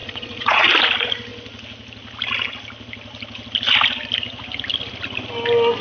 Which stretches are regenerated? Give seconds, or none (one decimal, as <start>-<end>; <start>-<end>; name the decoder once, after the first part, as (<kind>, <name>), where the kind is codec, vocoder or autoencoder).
0.0-0.6 (vocoder, Vocos)